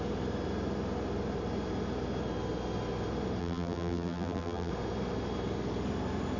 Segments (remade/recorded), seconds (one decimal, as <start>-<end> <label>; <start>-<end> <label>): 0.0-3.4 recorded; 3.4-4.7 remade; 4.7-6.4 recorded